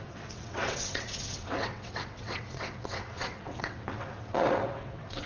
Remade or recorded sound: remade